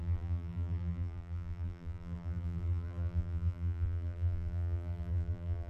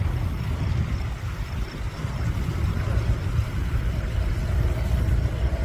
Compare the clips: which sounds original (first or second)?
second